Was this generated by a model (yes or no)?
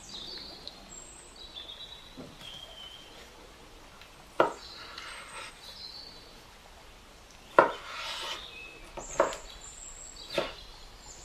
no